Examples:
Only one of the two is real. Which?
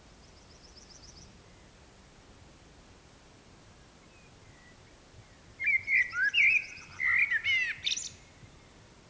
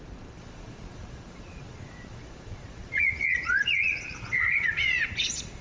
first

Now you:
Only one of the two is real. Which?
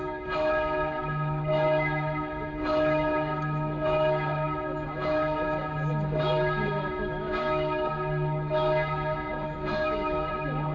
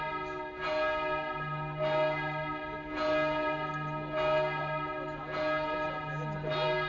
second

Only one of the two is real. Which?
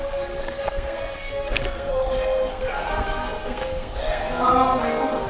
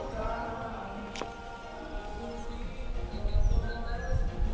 second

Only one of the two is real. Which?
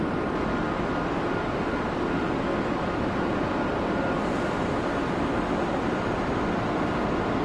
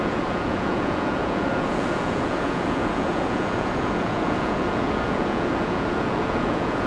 first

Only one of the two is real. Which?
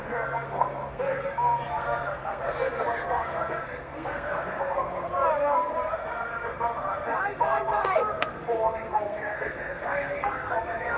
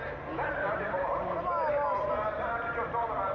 second